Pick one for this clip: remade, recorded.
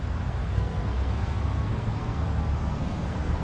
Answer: remade